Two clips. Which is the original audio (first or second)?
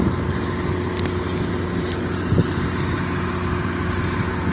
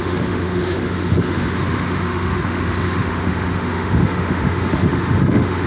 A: first